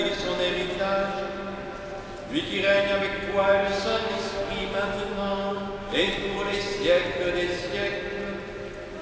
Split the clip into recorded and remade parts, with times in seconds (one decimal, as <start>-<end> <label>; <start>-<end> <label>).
0.0-3.6 recorded; 3.6-4.4 remade; 4.4-5.1 recorded; 5.1-6.0 remade; 6.0-9.0 recorded